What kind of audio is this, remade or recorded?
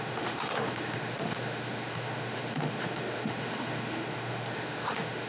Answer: remade